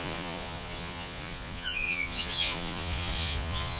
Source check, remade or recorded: remade